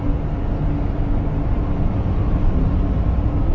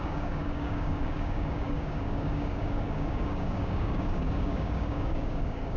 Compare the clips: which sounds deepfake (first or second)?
second